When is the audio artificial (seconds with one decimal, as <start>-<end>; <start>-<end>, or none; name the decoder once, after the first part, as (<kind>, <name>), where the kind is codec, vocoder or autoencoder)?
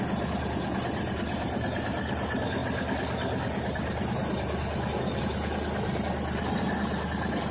none